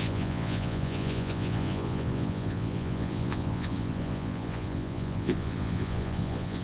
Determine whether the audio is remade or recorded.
remade